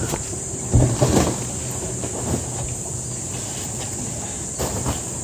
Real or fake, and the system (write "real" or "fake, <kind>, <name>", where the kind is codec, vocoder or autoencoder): real